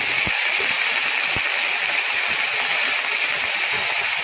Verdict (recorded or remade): recorded